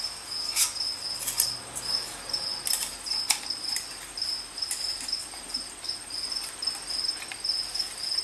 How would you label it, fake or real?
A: real